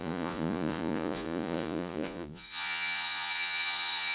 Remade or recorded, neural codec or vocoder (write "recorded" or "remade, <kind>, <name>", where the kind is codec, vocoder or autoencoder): remade, vocoder, Vocos